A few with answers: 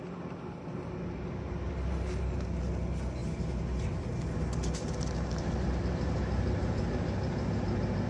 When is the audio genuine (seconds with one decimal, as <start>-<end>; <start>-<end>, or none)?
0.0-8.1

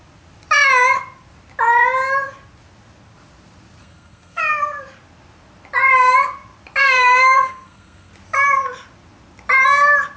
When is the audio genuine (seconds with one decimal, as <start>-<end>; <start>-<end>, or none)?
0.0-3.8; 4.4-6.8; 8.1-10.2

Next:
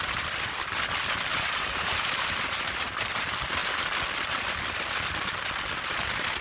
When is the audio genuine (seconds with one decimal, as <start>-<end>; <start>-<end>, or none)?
0.0-1.3; 3.1-6.4

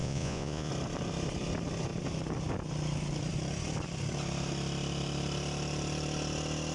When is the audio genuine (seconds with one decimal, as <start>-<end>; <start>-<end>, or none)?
0.7-6.7

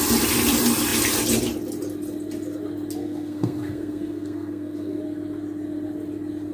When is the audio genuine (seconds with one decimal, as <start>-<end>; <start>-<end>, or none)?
0.0-3.0; 5.0-6.5

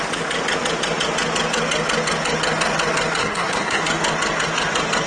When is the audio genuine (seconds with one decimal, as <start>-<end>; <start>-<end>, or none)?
0.0-3.2; 3.8-5.1

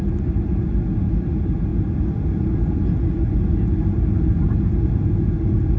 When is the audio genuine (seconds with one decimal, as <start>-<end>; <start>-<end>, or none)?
0.0-5.8